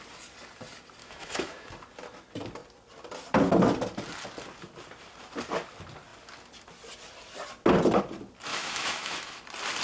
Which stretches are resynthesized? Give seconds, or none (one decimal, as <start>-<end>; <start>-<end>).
1.0-1.7; 8.5-9.4